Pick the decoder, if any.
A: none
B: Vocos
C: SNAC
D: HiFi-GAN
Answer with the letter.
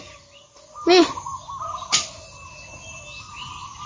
A